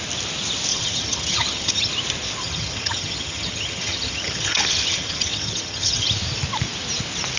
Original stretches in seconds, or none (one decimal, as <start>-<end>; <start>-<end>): 0.0-0.7; 1.9-2.4; 6.1-7.4